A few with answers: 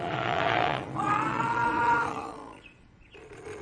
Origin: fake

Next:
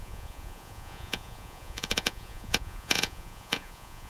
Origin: fake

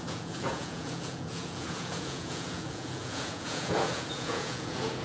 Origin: fake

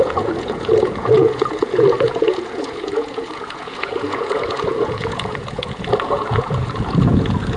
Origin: fake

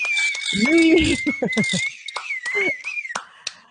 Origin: real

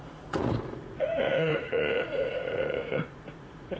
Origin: fake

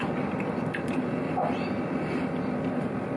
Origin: real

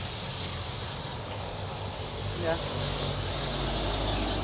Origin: real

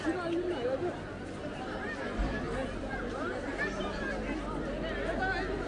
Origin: real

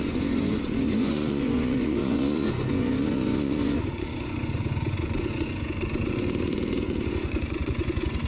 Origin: fake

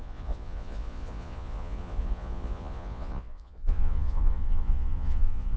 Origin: fake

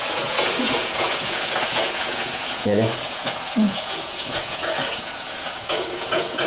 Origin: fake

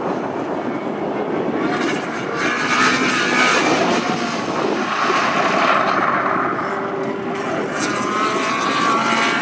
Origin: real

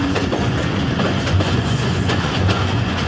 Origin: fake